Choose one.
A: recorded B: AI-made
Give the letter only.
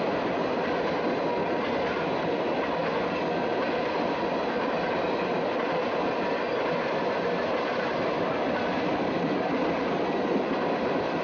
A